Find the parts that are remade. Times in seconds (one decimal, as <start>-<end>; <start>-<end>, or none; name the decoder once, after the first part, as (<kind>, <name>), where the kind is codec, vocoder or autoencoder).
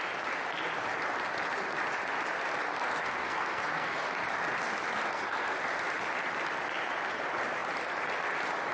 2.7-4.1 (codec, SNAC); 5.1-5.6